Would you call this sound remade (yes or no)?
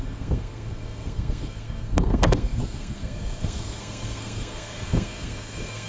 yes